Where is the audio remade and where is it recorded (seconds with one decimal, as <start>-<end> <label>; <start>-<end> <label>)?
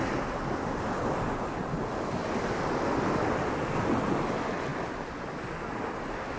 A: 0.0-6.4 recorded